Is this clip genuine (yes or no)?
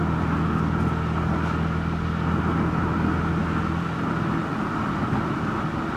yes